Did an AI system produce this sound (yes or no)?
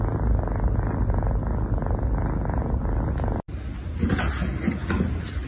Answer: no